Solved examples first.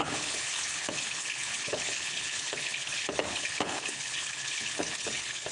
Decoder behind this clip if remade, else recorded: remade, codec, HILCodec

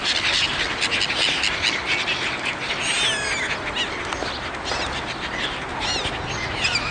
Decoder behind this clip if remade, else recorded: recorded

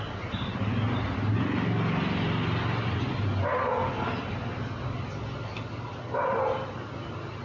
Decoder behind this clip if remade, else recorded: recorded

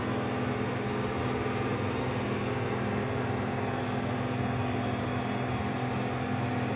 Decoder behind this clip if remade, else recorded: recorded